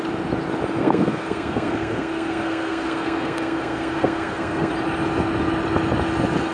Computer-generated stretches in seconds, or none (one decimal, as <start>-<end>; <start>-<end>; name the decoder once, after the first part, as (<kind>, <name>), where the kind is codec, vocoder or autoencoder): 0.8-4.7 (codec, SNAC)